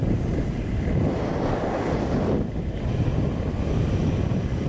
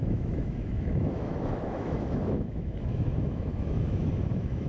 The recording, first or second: first